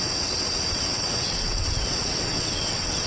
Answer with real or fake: fake